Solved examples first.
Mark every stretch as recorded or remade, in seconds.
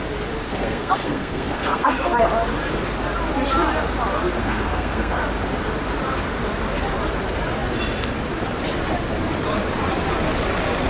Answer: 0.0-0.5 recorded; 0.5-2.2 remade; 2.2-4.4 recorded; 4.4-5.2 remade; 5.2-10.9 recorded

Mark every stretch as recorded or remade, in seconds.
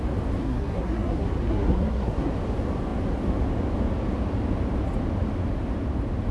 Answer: 0.0-0.4 recorded; 0.4-2.3 remade; 2.3-6.3 recorded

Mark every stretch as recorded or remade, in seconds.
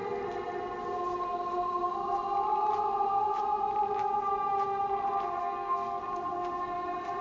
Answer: 0.0-5.4 recorded; 5.4-6.0 remade; 6.0-7.2 recorded